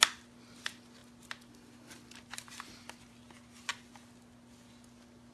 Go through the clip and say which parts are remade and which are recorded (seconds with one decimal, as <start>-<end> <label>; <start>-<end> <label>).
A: 0.0-5.3 recorded